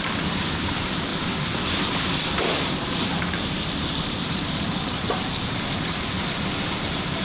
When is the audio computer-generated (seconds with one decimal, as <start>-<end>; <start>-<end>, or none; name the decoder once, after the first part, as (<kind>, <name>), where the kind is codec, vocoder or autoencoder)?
0.0-1.1 (vocoder, BigVGAN v2); 2.4-7.2